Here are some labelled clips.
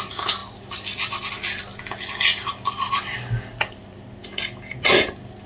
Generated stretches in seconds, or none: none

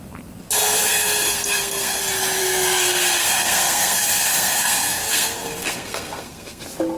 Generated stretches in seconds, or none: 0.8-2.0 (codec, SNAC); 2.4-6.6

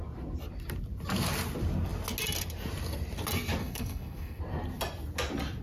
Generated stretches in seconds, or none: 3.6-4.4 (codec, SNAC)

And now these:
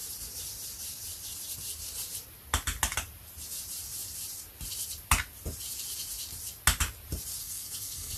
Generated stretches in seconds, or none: 7.4-8.2 (codec, SNAC)

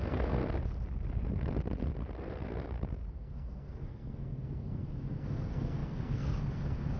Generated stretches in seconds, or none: 0.0-0.4 (codec, SNAC); 3.1-7.0

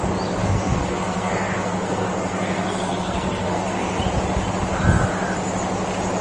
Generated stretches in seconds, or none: 0.4-4.0 (codec, SNAC)

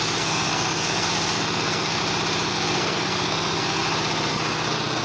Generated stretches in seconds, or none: 0.0-2.0 (codec, SNAC); 2.5-3.8; 4.3-5.0

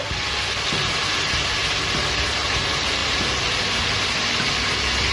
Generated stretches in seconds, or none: none